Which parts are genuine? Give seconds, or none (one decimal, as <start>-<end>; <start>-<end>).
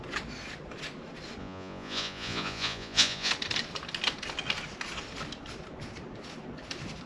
0.0-1.4; 3.3-7.1